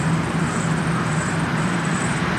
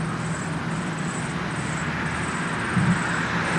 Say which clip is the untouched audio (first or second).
second